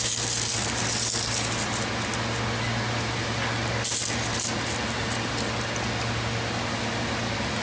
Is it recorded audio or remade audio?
recorded